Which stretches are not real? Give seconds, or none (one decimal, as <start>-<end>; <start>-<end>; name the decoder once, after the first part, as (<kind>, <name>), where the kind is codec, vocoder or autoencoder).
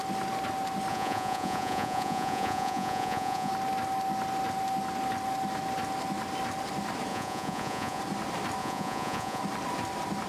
0.9-3.5 (vocoder, Vocos); 7.1-8.0; 8.6-9.4